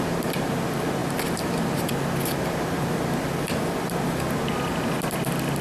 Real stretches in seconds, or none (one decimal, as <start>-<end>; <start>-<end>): 0.0-5.6

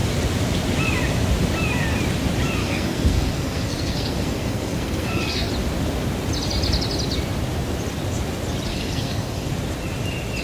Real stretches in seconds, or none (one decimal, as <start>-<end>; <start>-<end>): 0.0-2.6; 5.5-8.7; 9.5-10.4

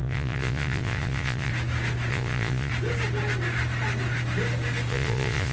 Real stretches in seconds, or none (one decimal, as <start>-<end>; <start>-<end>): 1.5-2.1; 2.7-4.9

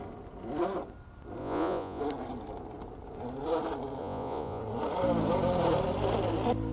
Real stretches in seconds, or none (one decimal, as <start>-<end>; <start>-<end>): 0.0-1.4; 2.0-4.0; 4.6-6.7

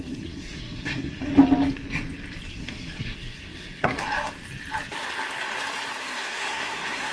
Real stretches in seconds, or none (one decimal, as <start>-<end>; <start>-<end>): 1.3-2.5; 4.0-6.0

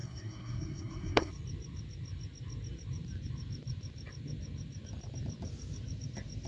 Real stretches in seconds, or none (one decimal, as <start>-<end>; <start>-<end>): 1.3-6.5

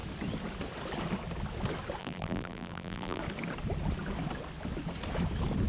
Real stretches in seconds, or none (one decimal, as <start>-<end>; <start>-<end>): 0.0-2.0; 3.2-5.7

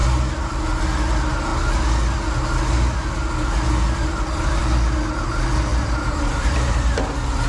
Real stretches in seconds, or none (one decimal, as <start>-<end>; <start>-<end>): 0.0-5.7; 7.0-7.5